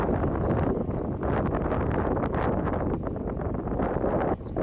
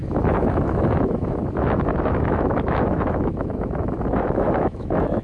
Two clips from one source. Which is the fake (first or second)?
second